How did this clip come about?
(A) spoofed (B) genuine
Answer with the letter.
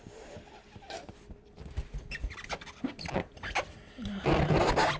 B